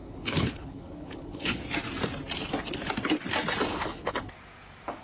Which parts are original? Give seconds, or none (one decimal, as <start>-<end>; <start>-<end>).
1.6-3.7; 4.3-5.0